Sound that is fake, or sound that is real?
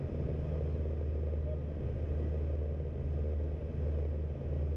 real